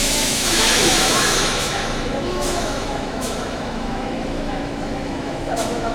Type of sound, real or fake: fake